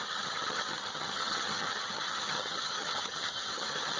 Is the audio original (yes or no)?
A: no